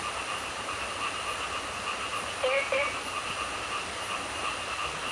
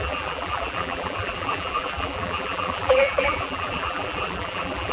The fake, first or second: second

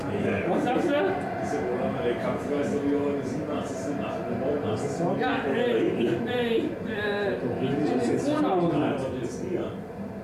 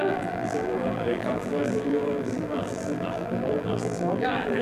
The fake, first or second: second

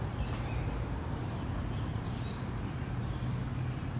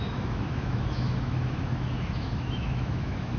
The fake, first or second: second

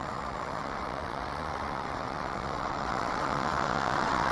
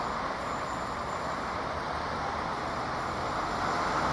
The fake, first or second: first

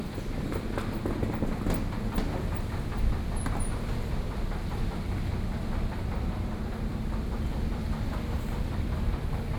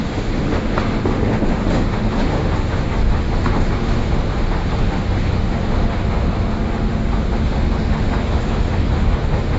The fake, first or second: second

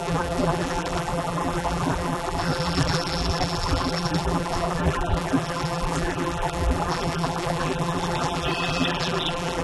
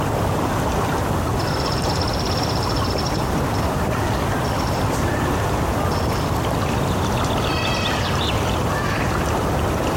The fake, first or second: first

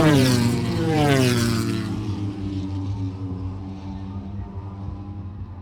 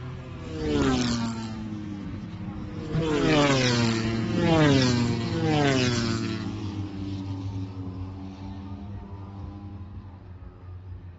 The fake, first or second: first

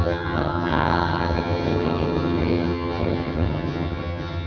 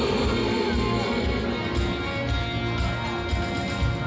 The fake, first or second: first